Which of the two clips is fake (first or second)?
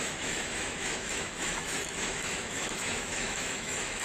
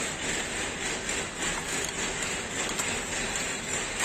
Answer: first